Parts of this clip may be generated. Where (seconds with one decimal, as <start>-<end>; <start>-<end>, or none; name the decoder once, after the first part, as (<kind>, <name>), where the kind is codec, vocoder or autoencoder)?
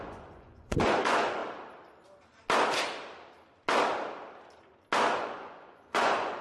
0.0-1.4 (vocoder, Vocos); 5.2-6.4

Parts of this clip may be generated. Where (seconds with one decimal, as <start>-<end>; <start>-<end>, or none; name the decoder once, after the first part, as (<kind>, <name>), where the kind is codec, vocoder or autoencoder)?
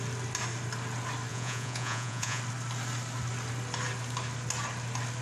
1.3-2.4 (vocoder, Vocos)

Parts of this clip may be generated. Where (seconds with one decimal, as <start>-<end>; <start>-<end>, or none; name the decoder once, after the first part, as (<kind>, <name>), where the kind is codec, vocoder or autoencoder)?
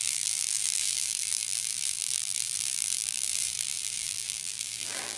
0.0-5.2 (vocoder, BigVGAN v2)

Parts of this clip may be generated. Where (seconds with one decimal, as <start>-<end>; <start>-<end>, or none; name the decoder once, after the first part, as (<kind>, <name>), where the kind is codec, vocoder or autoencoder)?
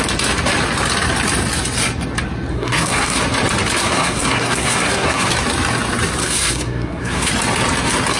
2.5-3.2 (codec, SNAC); 3.8-5.3; 6.2-7.3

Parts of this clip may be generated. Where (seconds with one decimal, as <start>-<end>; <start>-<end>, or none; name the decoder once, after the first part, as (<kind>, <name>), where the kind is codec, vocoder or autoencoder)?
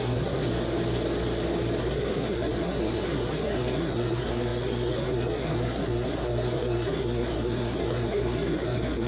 0.0-0.5 (codec, SNAC); 1.8-9.1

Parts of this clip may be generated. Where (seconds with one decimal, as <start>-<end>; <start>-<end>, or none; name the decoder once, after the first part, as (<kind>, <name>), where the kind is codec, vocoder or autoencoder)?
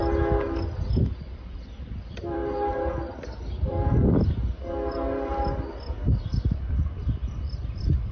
1.0-2.4 (vocoder, BigVGAN v2); 3.4-4.4; 6.6-8.1